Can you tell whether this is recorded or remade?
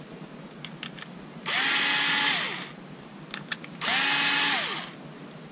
recorded